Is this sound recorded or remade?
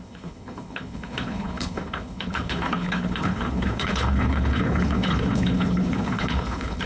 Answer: remade